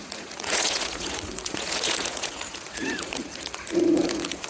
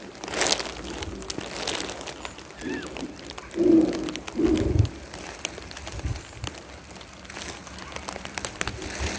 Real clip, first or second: second